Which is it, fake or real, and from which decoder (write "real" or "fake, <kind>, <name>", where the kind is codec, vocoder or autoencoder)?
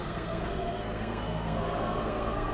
fake, codec, SNAC